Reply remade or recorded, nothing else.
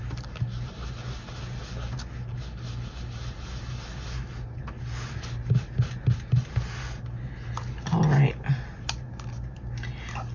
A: recorded